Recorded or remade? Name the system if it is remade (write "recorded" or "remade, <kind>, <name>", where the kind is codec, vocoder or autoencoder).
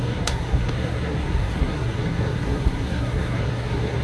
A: remade, codec, SNAC